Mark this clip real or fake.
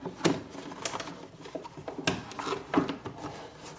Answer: real